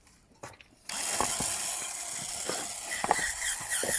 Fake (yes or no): no